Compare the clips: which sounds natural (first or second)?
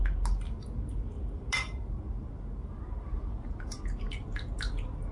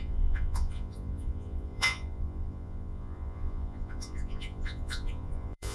first